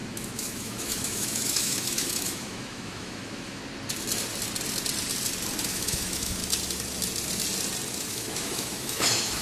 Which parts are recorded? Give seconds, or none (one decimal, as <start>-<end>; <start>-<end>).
3.6-5.7; 6.4-7.9